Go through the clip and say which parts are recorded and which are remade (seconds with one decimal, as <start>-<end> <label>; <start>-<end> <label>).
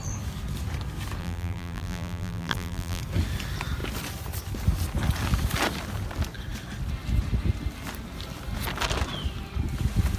0.0-1.2 recorded; 1.2-3.0 remade; 3.0-10.2 recorded